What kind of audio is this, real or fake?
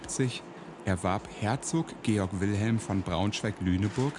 real